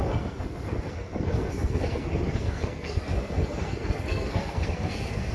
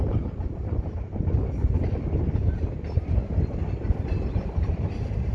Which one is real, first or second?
second